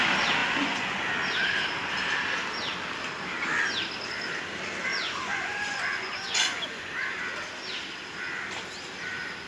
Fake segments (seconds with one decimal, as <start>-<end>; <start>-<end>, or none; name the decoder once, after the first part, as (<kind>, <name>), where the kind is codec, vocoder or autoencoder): 0.4-1.0 (vocoder, Vocos); 4.9-7.2